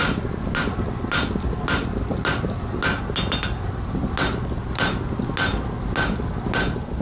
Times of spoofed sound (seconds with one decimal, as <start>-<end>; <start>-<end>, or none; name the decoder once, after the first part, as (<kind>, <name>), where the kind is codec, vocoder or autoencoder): none